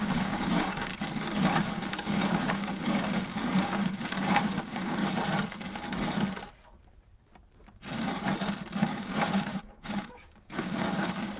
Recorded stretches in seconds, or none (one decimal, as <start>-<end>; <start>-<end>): 0.9-1.7; 5.0-8.8